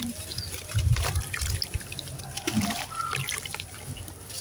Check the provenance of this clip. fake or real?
real